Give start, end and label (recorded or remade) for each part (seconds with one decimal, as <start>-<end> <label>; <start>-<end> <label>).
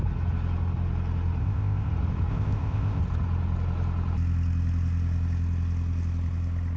0.0-1.4 recorded; 1.4-1.9 remade; 1.9-2.3 recorded; 2.3-3.0 remade; 3.0-6.8 recorded